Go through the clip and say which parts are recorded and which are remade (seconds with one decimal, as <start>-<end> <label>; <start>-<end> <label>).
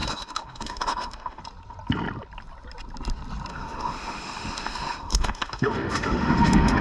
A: 0.0-1.4 remade; 1.4-3.5 recorded; 3.5-6.8 remade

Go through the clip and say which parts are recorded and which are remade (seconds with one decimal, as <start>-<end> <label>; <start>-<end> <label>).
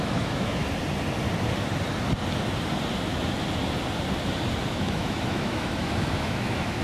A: 0.0-0.6 remade; 0.6-4.7 recorded; 4.7-6.8 remade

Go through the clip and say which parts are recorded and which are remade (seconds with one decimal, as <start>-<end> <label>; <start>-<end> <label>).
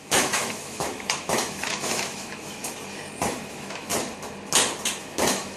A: 0.0-2.6 remade; 2.6-3.3 recorded; 3.3-3.9 remade; 3.9-5.0 recorded; 5.0-5.6 remade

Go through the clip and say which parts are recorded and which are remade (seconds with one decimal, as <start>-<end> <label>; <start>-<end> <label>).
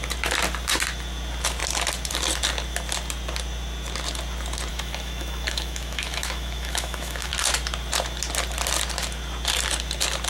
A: 0.0-4.7 recorded; 4.7-7.3 remade; 7.3-10.3 recorded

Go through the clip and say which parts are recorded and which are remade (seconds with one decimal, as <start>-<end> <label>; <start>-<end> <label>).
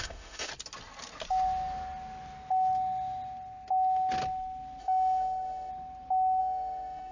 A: 0.0-0.5 remade; 0.5-4.8 recorded; 4.8-5.7 remade; 5.7-6.4 recorded; 6.4-7.1 remade